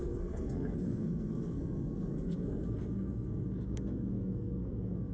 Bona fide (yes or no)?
no